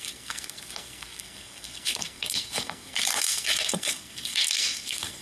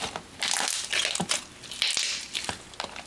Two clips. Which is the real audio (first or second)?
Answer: second